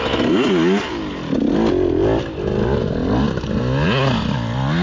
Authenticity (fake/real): real